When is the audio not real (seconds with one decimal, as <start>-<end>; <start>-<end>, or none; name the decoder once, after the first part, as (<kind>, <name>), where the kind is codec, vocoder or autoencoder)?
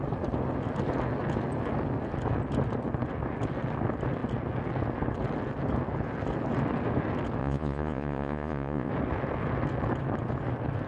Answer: 7.4-8.9 (vocoder, Vocos)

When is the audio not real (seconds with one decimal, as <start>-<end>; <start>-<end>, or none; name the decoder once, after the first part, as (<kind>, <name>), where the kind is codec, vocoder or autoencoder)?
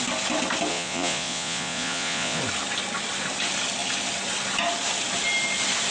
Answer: 0.7-2.4 (vocoder, Vocos)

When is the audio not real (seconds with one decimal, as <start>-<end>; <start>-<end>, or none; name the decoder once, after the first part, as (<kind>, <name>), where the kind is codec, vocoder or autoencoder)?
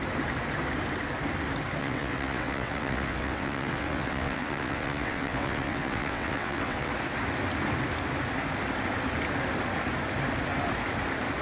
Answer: 1.8-6.9 (vocoder, WaveNeXt)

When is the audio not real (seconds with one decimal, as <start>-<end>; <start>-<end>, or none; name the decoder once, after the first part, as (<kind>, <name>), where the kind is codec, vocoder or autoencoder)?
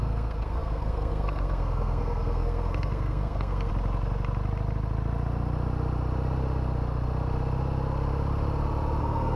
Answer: 0.0-3.7 (codec, SNAC); 9.0-9.4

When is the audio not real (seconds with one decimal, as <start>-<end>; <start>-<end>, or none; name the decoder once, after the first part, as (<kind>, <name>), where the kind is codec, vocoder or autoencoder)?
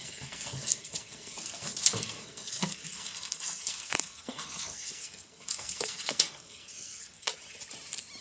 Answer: 0.0-7.3 (codec, SNAC)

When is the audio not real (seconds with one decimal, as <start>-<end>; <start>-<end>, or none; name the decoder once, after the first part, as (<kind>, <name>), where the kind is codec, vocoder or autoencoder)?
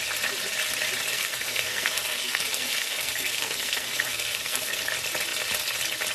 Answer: 1.1-4.8 (codec, SNAC)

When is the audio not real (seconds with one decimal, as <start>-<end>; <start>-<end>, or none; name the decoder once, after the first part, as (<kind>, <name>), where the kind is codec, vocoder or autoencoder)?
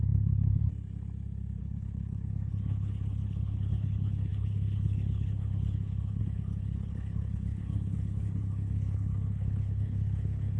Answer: 0.0-0.6 (codec, HILCodec); 1.6-10.6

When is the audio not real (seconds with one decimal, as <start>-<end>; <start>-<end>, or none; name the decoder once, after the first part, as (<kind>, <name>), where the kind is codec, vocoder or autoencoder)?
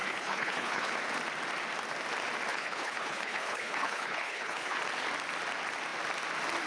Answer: 0.0-0.9 (codec, HILCodec); 2.5-4.8